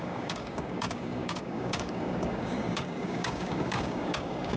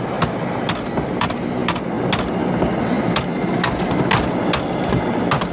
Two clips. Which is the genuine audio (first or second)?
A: second